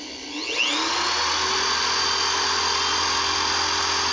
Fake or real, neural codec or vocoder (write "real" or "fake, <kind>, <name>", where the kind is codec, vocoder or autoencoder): real